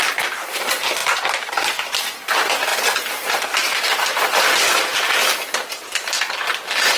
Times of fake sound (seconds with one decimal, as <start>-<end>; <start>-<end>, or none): none